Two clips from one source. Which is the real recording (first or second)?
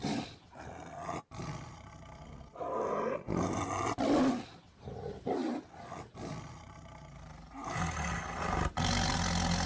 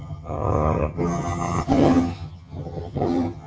first